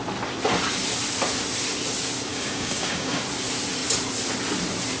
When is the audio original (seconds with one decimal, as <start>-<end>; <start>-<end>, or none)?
0.0-2.3; 3.2-5.0